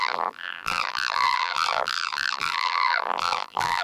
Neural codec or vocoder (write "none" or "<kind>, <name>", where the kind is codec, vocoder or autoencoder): vocoder, BigVGAN v2